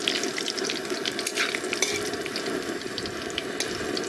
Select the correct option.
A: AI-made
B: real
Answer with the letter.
B